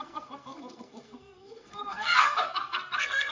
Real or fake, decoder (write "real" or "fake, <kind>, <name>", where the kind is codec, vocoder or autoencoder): fake, codec, SNAC